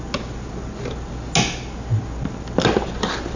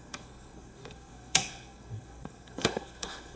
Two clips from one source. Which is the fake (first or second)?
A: second